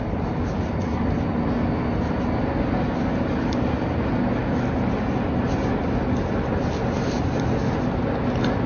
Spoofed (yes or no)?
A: no